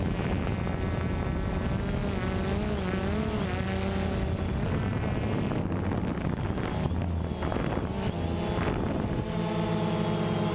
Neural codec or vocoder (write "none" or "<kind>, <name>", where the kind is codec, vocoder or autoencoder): none